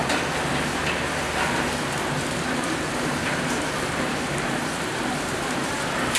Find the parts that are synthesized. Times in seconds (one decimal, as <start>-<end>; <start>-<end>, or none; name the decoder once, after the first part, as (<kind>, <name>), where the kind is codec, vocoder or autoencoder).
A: 2.5-6.2 (vocoder, BigVGAN v2)